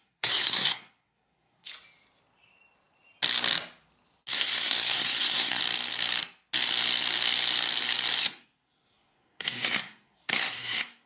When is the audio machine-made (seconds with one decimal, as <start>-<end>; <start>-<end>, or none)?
0.0-1.7; 4.3-5.6; 8.2-11.1